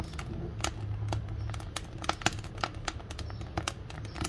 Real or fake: real